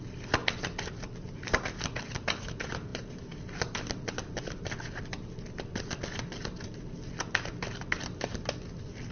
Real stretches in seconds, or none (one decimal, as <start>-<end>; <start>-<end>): 0.0-9.1